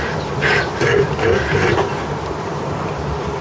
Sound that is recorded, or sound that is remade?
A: remade